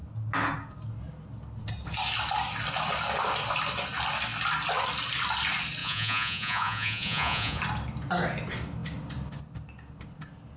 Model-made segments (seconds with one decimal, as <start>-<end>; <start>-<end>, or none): 5.8-7.6